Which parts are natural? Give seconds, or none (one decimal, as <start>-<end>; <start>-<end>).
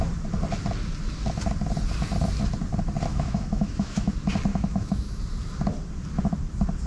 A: 0.0-3.1; 4.1-4.5; 5.2-6.9